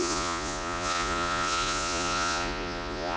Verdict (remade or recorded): remade